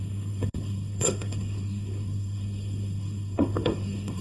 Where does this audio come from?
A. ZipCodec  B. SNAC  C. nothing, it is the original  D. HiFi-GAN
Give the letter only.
B